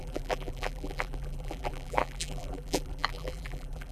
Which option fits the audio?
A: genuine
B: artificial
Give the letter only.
B